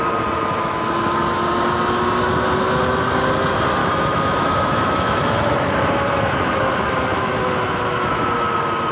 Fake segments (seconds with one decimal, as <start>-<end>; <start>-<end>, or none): 3.8-8.2